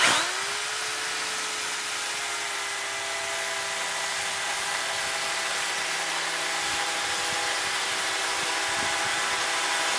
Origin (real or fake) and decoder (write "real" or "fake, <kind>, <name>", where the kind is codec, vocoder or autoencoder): real